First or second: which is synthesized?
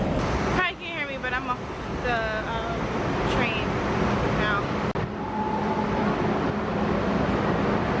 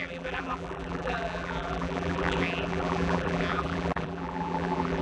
second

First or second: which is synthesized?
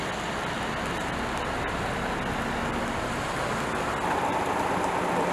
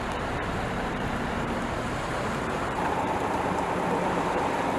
second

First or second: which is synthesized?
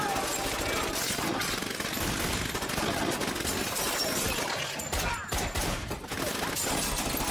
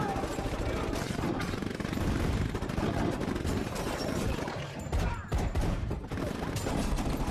second